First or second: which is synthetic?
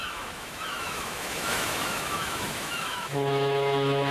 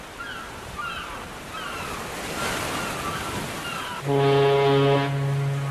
first